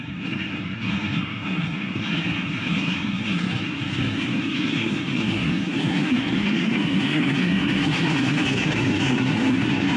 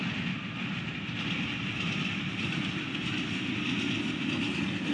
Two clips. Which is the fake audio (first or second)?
first